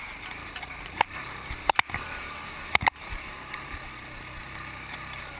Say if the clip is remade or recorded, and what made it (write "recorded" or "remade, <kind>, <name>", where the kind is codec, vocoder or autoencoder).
remade, vocoder, BigVGAN v2